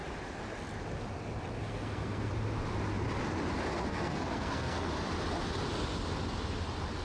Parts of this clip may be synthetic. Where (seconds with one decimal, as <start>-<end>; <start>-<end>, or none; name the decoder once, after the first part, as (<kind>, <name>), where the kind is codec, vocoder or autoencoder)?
1.6-2.3 (codec, SNAC); 3.7-4.9